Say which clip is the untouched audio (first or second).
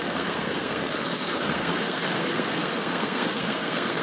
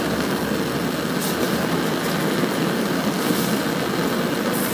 second